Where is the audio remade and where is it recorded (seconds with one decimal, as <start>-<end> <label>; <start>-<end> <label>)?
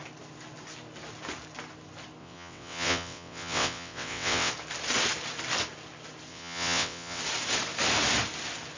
0.0-2.2 recorded; 2.2-4.5 remade; 4.5-6.3 recorded; 6.3-7.2 remade; 7.2-8.8 recorded